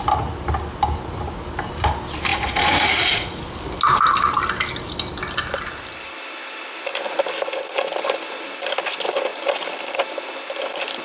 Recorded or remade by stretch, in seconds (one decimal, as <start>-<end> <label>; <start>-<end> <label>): 0.0-2.3 recorded; 2.3-3.4 remade; 3.4-11.0 recorded